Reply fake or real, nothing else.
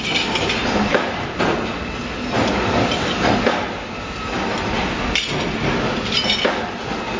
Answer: real